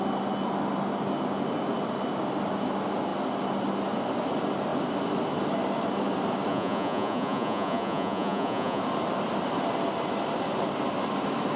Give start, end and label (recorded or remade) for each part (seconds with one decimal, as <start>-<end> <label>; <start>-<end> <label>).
0.0-6.5 recorded; 6.5-8.8 remade; 8.8-11.6 recorded